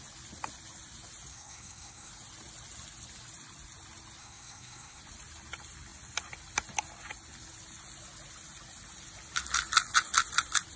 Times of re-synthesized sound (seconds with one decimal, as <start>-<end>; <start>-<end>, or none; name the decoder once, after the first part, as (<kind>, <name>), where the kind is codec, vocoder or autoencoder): 1.3-2.1 (codec, SNAC); 4.2-5.0

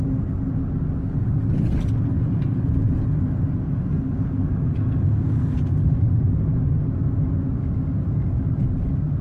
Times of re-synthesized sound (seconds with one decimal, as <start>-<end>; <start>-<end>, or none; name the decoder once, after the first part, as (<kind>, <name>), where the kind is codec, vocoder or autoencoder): 3.6-5.6 (codec, SNAC)

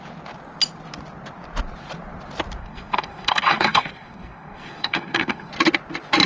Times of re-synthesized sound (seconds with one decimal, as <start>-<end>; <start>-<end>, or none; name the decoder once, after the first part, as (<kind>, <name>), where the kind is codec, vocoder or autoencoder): 2.6-5.5 (codec, SNAC)

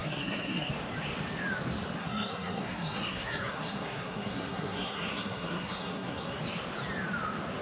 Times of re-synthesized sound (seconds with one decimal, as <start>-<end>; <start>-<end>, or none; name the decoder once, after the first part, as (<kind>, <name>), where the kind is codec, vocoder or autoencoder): 0.0-0.7 (codec, SNAC); 2.0-6.4